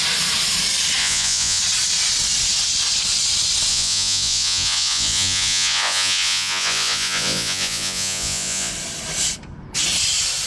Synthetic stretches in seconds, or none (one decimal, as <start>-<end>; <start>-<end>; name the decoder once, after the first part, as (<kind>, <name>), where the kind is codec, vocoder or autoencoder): 1.0-1.6 (vocoder, Vocos); 3.7-8.7